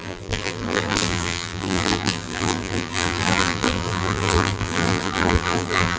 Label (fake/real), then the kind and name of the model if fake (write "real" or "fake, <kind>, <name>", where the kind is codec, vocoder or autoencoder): fake, vocoder, BigVGAN v2